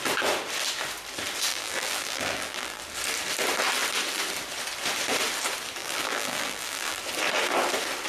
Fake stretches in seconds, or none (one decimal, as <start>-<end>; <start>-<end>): 1.5-2.8; 5.8-7.0